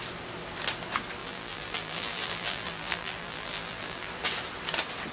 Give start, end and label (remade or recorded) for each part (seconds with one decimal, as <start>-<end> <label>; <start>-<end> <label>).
0.0-1.2 recorded; 1.2-4.1 remade; 4.1-5.1 recorded